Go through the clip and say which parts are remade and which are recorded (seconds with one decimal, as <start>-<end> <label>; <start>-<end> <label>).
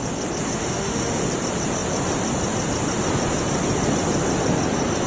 0.0-0.6 recorded; 0.6-1.3 remade; 1.3-5.1 recorded